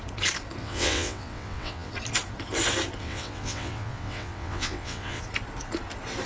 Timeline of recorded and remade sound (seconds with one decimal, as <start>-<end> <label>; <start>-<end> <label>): 0.0-0.6 recorded; 0.6-1.9 remade; 1.9-3.0 recorded; 3.0-5.2 remade; 5.2-6.3 recorded